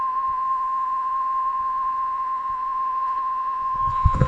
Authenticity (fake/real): fake